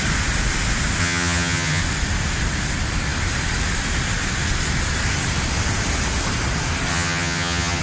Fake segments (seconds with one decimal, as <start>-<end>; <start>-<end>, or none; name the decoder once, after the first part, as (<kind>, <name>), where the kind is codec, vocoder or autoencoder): 1.0-1.8 (vocoder, HiFi-GAN); 6.9-7.8